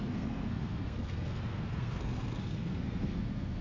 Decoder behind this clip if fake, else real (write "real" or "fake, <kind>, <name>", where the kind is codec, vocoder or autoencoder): fake, codec, SNAC